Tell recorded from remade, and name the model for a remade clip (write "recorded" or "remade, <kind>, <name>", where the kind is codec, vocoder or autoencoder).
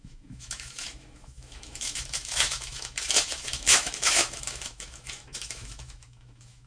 remade, autoencoder, DAC-VAE